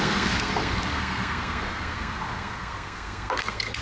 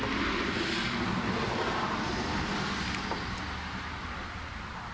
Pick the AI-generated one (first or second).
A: first